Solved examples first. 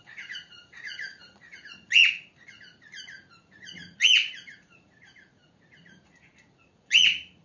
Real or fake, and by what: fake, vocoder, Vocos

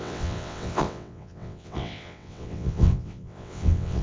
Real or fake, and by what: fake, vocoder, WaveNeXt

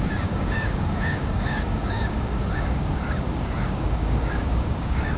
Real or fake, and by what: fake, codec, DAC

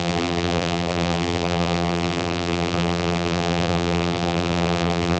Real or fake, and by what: fake, vocoder, BigVGAN v2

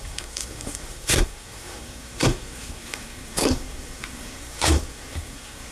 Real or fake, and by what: fake, codec, SNAC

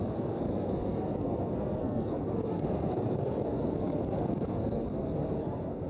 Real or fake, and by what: fake, codec, SNAC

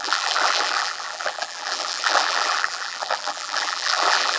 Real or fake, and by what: fake, vocoder, BigVGAN v2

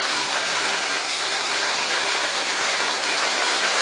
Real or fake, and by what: fake, codec, SNAC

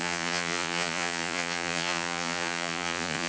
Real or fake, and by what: fake, vocoder, Vocos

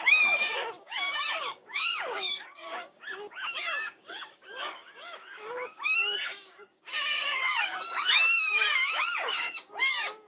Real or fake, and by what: fake, codec, DAC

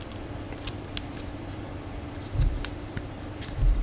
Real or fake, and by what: fake, vocoder, BigVGAN v2